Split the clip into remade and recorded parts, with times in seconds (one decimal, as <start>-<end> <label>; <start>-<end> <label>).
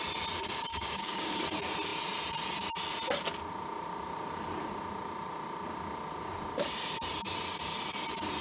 0.0-0.7 recorded; 0.7-1.4 remade; 1.4-8.4 recorded